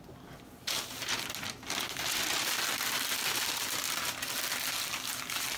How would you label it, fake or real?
real